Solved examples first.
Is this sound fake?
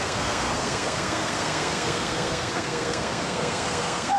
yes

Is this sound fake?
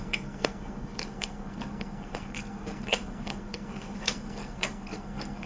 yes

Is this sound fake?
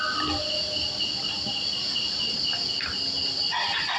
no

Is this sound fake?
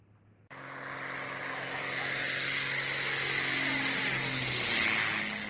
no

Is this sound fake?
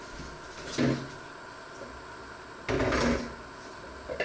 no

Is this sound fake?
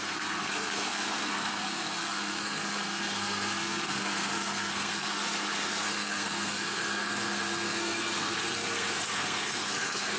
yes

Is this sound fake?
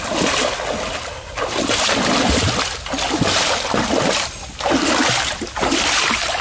no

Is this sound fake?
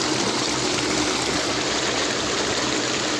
no